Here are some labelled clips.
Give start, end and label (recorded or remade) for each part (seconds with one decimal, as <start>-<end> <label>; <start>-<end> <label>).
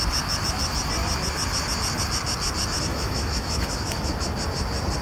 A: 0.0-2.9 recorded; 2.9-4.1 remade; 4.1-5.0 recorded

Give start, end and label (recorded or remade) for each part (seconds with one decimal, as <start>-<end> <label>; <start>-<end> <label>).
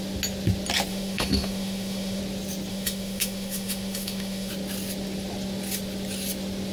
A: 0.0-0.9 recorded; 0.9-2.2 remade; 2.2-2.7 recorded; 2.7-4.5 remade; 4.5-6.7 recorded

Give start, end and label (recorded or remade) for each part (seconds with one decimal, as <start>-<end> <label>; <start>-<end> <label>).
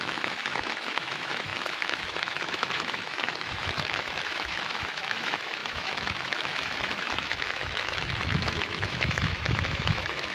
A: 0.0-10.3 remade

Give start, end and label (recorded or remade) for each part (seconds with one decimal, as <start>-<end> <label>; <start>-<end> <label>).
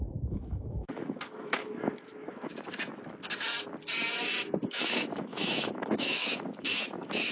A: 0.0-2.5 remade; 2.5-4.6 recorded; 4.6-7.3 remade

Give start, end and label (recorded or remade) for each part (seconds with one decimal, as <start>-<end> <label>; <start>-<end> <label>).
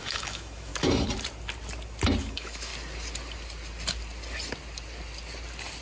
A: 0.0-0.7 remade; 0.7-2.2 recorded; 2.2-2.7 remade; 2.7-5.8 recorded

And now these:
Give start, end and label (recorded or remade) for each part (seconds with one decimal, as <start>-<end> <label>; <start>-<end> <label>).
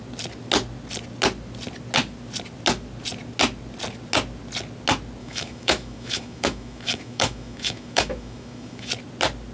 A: 0.0-5.2 recorded; 5.2-8.9 remade; 8.9-9.5 recorded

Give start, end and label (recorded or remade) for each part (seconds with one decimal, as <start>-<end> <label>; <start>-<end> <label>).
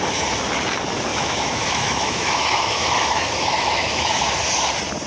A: 0.0-1.1 recorded; 1.1-4.2 remade; 4.2-5.1 recorded